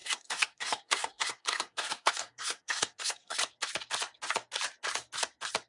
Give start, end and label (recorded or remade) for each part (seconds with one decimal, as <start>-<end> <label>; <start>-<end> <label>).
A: 0.0-3.4 remade; 3.4-5.7 recorded

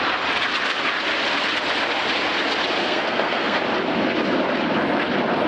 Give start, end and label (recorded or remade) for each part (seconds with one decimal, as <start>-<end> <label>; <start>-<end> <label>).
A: 0.0-2.8 recorded; 2.8-3.6 remade; 3.6-5.5 recorded

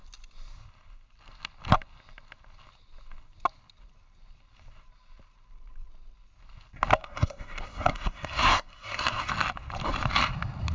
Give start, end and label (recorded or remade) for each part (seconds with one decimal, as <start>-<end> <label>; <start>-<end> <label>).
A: 0.0-7.0 recorded; 7.0-9.3 remade; 9.3-10.7 recorded

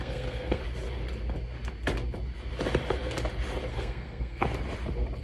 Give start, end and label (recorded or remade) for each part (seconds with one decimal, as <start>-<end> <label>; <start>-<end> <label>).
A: 0.0-0.6 remade; 0.6-3.7 recorded; 3.7-4.4 remade; 4.4-5.2 recorded

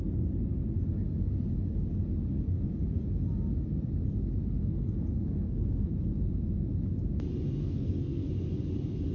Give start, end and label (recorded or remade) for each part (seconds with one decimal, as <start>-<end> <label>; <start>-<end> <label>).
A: 0.0-4.6 recorded; 4.6-5.9 remade; 5.9-7.6 recorded; 7.6-8.3 remade; 8.3-9.1 recorded

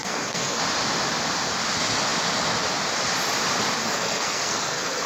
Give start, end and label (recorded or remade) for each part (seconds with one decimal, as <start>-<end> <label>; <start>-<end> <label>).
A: 0.0-0.6 remade; 0.6-3.8 recorded; 3.8-5.1 remade

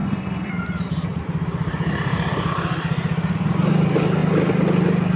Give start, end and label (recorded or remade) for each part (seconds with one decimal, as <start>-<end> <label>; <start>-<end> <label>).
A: 0.0-0.5 remade; 0.5-5.2 recorded

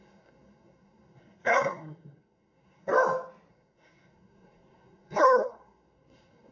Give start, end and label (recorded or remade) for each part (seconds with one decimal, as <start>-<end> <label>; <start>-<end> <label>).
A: 0.0-2.9 remade; 2.9-3.5 recorded; 3.5-6.5 remade